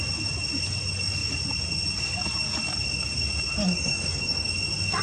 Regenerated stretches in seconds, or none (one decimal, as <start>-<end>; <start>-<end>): 3.6-4.5